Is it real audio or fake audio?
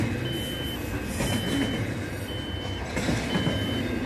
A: real